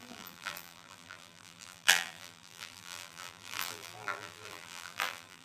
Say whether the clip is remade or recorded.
remade